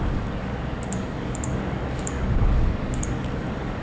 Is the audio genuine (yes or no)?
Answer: no